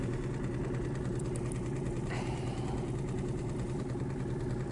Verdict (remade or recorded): recorded